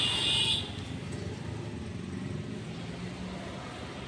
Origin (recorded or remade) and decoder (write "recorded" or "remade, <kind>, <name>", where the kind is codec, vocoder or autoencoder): recorded